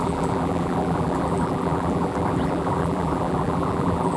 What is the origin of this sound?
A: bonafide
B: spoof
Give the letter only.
B